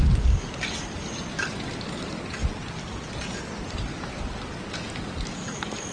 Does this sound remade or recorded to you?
recorded